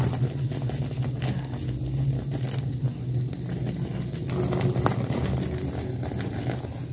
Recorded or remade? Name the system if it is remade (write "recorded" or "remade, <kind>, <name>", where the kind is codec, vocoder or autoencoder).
recorded